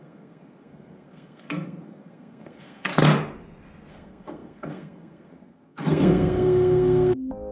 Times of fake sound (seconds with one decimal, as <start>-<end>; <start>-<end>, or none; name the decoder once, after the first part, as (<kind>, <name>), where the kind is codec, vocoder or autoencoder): 0.0-3.0 (codec, SNAC); 3.9-7.5